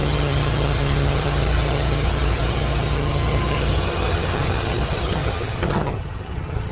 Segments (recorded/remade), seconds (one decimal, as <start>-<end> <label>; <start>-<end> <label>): 0.0-6.7 remade